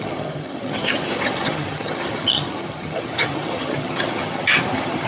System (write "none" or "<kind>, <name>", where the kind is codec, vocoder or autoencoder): vocoder, HiFi-GAN